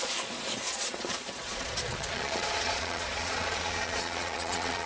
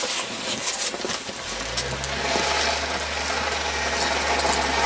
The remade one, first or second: first